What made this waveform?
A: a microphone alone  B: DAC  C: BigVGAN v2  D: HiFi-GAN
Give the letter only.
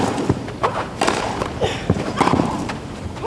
C